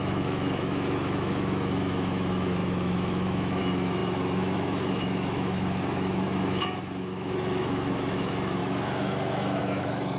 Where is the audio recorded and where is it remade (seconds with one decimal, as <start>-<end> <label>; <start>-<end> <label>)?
0.0-10.2 remade